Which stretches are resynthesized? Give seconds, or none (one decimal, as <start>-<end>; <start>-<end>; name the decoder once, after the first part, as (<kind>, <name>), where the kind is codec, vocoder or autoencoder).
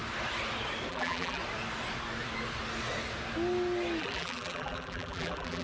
0.9-1.4 (vocoder, BigVGAN v2); 4.0-5.6